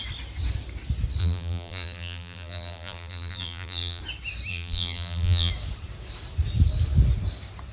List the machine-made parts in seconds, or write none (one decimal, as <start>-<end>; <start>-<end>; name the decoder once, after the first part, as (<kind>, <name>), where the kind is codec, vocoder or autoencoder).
1.2-4.0 (vocoder, BigVGAN v2); 4.5-5.5